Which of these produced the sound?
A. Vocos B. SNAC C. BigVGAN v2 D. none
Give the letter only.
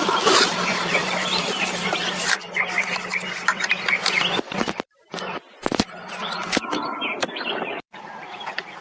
C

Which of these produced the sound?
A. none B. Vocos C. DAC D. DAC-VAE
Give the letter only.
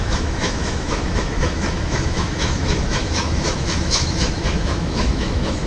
D